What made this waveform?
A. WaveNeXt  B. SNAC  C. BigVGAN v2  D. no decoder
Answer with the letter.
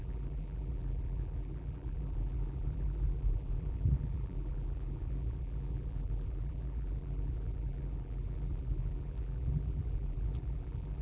C